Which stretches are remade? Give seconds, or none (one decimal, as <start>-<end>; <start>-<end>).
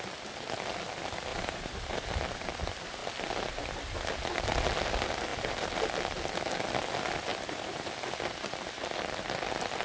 1.3-2.1; 5.3-5.9; 7.3-7.9